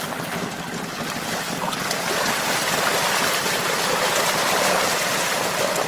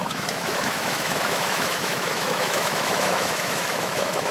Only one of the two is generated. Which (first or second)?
second